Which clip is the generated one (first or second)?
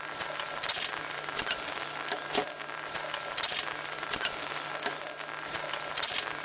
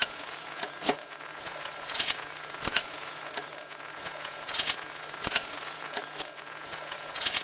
second